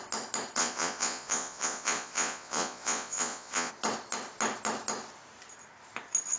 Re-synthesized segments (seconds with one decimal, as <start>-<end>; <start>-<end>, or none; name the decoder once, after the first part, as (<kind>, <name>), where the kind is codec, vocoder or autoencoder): 0.6-3.7 (vocoder, Vocos)